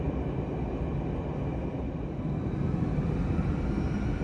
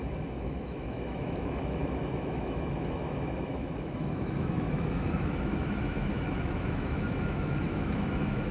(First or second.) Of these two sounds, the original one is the first